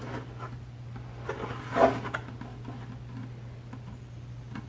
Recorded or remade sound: recorded